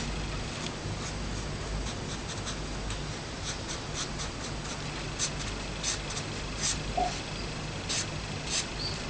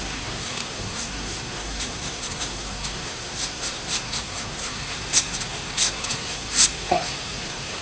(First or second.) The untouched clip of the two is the first